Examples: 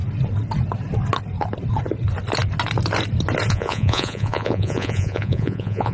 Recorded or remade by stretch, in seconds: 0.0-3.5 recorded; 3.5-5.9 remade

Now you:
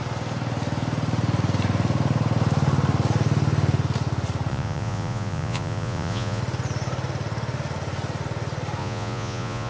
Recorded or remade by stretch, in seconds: 0.0-4.5 recorded; 4.5-6.4 remade; 6.4-8.8 recorded; 8.8-9.7 remade

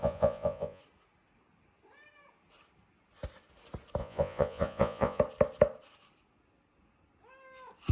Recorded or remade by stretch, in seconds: 0.0-0.8 remade; 0.8-4.0 recorded; 4.0-5.2 remade; 5.2-7.9 recorded

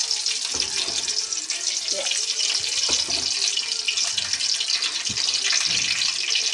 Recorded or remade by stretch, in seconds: 0.0-6.5 recorded

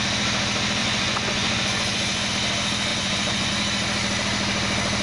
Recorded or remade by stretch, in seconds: 0.0-0.8 recorded; 0.8-2.3 remade; 2.3-2.9 recorded; 2.9-3.5 remade; 3.5-5.0 recorded

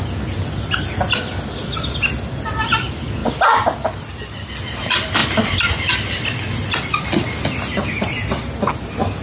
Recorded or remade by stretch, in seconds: 0.0-9.2 recorded

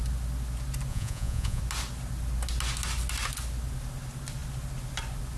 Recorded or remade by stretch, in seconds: 0.0-0.9 recorded; 0.9-1.6 remade; 1.6-5.4 recorded